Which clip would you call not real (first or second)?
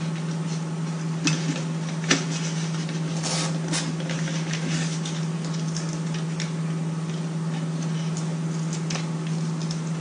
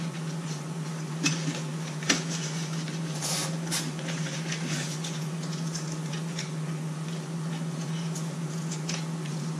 second